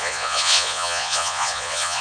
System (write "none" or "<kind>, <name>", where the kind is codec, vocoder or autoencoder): vocoder, Vocos